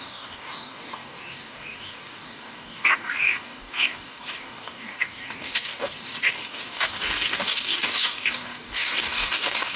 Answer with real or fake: fake